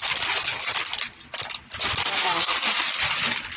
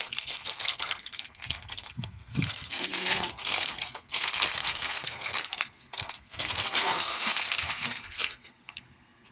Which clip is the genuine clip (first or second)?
first